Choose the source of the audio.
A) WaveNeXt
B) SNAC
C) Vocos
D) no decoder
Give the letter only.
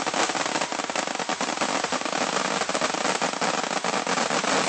D